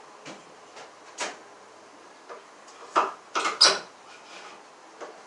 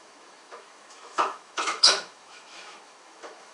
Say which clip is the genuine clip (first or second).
first